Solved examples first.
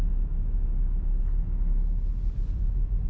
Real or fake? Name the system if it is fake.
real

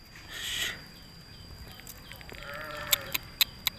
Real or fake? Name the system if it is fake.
real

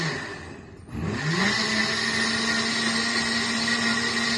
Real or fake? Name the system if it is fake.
real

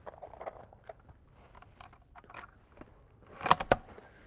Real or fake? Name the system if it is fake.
real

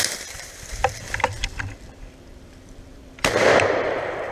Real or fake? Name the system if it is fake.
fake, vocoder, BigVGAN v2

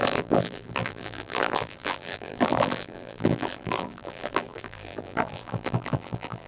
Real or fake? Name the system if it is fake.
fake, vocoder, BigVGAN v2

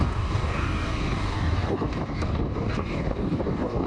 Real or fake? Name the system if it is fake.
fake, codec, DAC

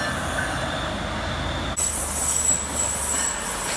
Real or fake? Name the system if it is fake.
real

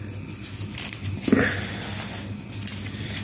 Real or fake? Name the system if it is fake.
real